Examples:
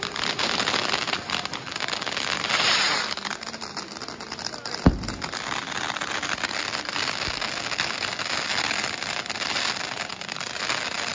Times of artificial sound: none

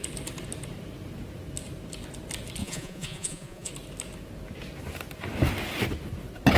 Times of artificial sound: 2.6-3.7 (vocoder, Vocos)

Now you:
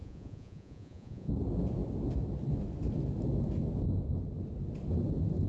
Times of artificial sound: 0.0-1.3 (vocoder, Vocos)

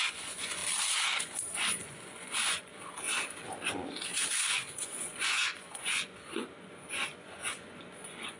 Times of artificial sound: 0.0-0.6 (vocoder, Vocos); 1.2-2.7; 4.5-8.4